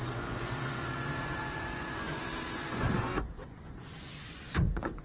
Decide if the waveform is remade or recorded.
remade